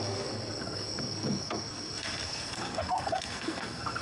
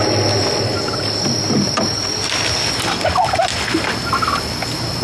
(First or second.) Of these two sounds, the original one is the second